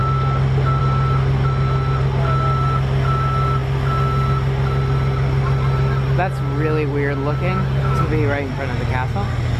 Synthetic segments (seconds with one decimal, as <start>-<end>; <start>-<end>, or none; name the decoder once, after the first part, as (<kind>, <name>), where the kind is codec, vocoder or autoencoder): none